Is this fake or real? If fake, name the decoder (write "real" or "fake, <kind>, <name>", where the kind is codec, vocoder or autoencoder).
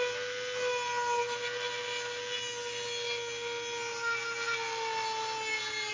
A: real